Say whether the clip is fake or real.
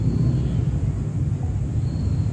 real